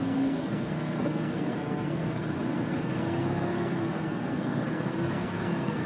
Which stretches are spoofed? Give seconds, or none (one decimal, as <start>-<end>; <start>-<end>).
0.0-5.9